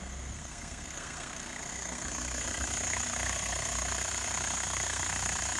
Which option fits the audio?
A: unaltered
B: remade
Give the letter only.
B